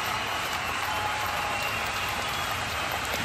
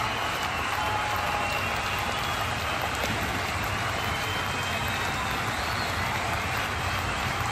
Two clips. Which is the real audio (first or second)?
second